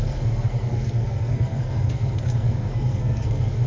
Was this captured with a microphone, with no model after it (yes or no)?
no